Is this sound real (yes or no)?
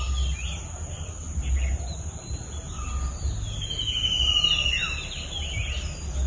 yes